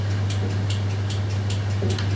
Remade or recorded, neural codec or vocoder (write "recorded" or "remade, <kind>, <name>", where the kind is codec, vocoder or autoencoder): recorded